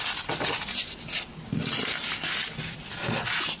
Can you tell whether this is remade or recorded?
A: recorded